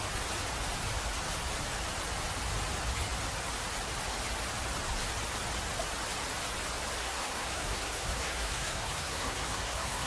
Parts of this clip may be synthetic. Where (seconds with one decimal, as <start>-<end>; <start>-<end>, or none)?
7.0-10.1